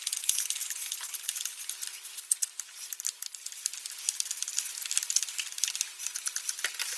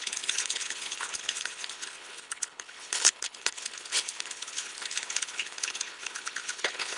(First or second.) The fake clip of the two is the second